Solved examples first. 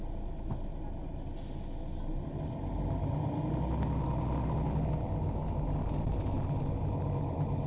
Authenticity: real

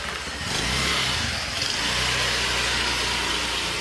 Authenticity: real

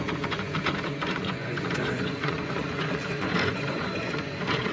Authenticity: fake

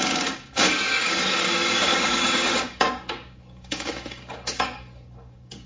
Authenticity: fake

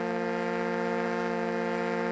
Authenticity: real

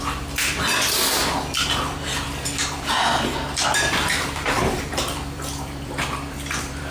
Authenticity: fake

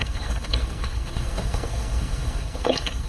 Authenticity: fake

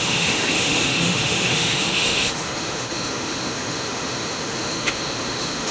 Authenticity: fake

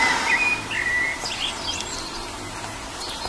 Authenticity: real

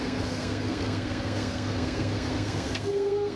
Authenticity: fake